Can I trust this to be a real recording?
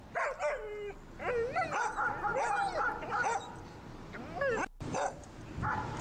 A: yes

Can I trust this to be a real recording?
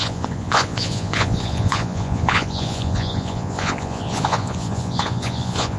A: no